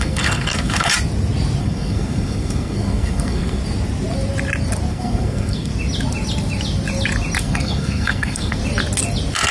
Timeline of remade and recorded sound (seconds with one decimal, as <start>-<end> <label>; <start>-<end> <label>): 0.0-0.9 remade; 0.9-1.6 recorded; 1.6-3.6 remade; 3.6-4.9 recorded; 4.9-5.7 remade; 5.7-7.4 recorded; 7.4-8.6 remade; 8.6-9.5 recorded